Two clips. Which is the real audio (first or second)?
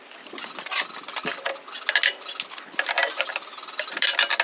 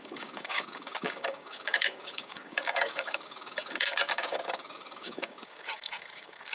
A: first